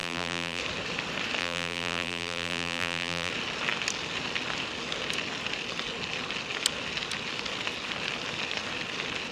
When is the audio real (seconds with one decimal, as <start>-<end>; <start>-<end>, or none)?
0.6-1.4; 3.3-9.3